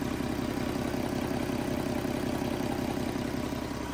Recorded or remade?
recorded